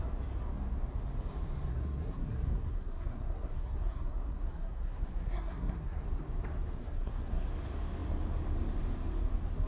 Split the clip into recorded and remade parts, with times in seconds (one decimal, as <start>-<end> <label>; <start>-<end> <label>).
0.0-1.7 recorded; 1.7-6.0 remade; 6.0-6.8 recorded; 6.8-7.5 remade; 7.5-9.7 recorded